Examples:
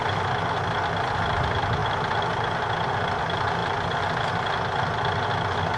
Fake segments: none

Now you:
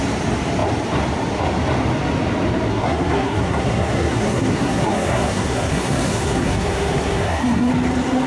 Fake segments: 2.7-7.7

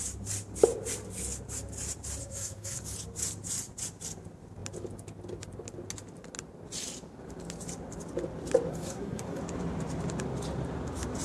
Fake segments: 2.2-2.8; 8.7-9.4

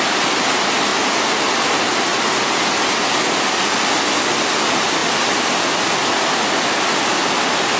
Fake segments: none